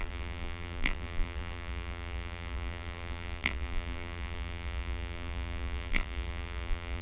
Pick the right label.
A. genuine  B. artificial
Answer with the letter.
B